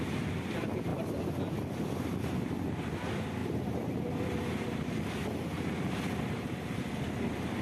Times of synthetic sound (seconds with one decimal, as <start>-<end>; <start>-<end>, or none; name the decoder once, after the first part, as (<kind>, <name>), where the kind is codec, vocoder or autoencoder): 3.4-6.8 (vocoder, BigVGAN v2)